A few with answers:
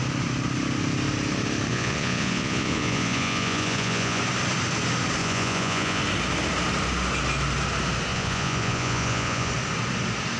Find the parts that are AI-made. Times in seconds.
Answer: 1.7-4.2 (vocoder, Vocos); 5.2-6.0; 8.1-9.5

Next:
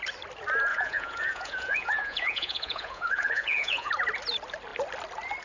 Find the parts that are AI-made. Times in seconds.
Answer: 0.7-3.9 (vocoder, Vocos)